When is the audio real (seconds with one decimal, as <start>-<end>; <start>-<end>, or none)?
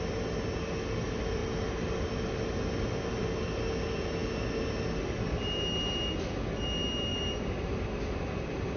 0.0-1.4; 3.6-7.1